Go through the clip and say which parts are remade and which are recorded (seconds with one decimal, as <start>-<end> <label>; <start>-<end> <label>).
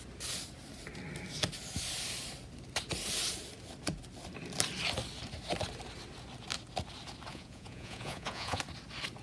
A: 0.0-7.3 recorded; 7.3-8.6 remade; 8.6-9.2 recorded